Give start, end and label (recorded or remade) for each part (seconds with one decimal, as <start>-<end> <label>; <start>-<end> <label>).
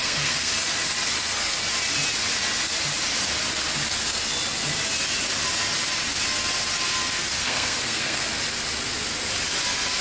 0.0-0.5 remade; 0.5-7.4 recorded; 7.4-8.3 remade; 8.3-10.0 recorded